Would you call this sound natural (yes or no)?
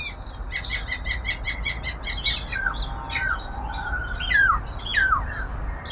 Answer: yes